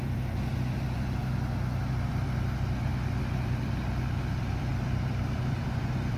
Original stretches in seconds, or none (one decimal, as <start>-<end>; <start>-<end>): 1.2-2.1